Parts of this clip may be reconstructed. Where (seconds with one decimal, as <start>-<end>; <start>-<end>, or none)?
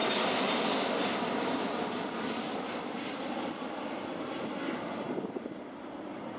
0.0-2.9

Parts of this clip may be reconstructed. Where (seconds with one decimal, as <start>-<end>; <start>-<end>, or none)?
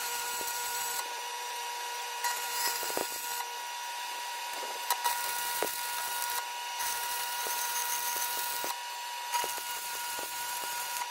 0.0-3.0; 3.9-5.0; 6.8-7.8; 9.7-11.1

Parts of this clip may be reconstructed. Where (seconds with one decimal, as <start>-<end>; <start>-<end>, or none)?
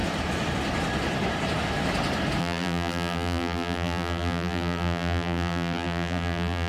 2.4-6.7